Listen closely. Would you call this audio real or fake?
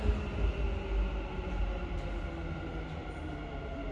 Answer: real